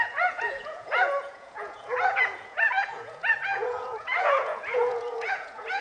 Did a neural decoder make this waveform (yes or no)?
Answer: yes